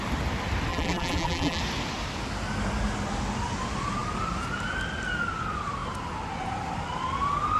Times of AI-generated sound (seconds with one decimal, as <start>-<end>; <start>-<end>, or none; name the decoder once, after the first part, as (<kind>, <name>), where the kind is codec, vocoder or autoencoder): 0.7-1.6 (vocoder, BigVGAN v2)